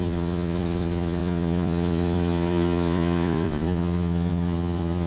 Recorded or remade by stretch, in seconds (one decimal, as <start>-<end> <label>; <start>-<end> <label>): 0.0-5.1 remade

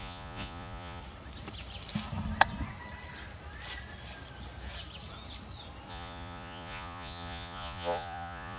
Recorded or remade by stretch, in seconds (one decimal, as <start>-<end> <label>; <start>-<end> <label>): 0.0-1.0 remade; 1.0-5.9 recorded; 5.9-8.6 remade

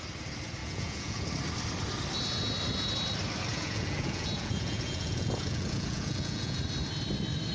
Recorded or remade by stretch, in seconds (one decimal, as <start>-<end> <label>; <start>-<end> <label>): 0.0-0.6 recorded; 0.6-1.3 remade; 1.3-3.5 recorded; 3.5-6.6 remade; 6.6-7.5 recorded

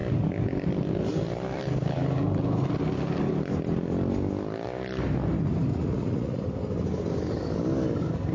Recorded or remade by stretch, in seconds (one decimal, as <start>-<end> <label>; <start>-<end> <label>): 0.0-5.7 recorded; 5.7-6.4 remade; 6.4-8.3 recorded

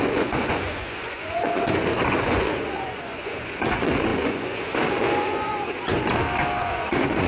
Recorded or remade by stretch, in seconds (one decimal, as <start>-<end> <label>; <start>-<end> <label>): 0.0-5.9 remade; 5.9-6.6 recorded; 6.6-7.3 remade

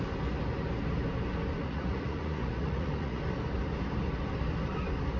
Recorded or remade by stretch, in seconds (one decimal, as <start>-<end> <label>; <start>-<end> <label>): 0.0-1.6 recorded; 1.6-3.2 remade; 3.2-5.2 recorded

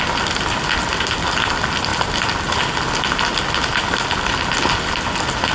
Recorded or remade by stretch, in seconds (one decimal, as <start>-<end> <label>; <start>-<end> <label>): 0.0-5.5 recorded